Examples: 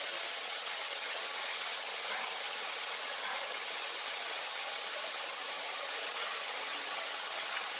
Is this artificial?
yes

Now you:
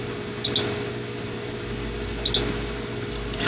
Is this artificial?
no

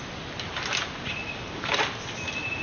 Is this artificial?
no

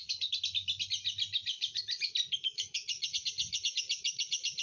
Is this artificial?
no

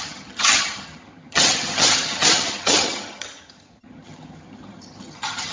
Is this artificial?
yes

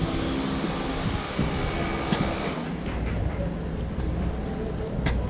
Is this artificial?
no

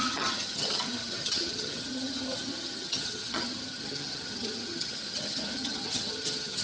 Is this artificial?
yes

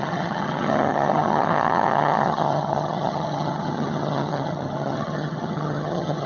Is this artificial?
yes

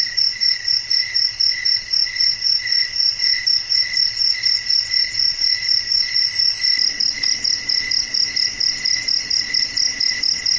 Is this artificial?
no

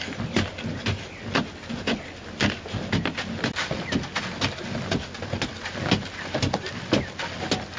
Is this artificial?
no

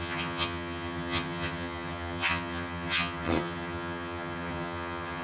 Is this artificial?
yes